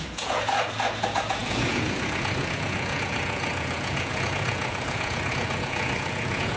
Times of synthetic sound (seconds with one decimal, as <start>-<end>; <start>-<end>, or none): 0.0-6.6